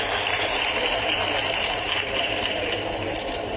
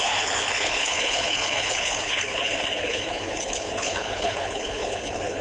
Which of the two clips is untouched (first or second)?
first